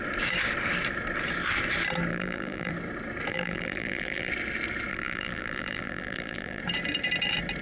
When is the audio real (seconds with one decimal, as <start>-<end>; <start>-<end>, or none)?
0.0-2.1; 2.7-3.3; 4.3-4.9; 6.6-7.6